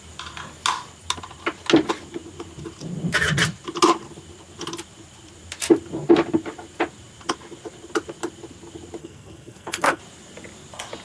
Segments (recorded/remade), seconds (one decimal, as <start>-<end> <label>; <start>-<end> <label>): 0.0-9.0 recorded; 9.0-10.0 remade; 10.0-11.0 recorded